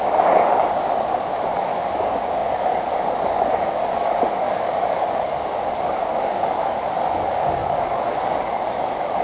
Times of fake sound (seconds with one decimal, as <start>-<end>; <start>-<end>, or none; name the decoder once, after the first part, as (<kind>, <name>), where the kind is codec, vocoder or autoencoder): 0.0-0.6 (codec, DAC); 1.6-9.2